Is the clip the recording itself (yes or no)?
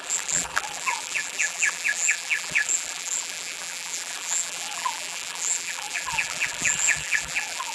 no